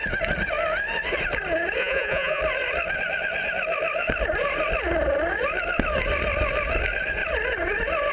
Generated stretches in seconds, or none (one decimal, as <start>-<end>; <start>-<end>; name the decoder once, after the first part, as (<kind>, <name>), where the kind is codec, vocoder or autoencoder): 1.8-2.4 (vocoder, Vocos)